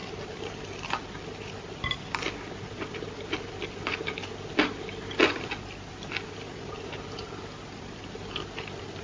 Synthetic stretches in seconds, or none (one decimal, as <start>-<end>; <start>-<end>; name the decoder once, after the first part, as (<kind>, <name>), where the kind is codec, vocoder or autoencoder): none